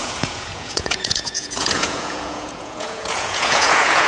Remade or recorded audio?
remade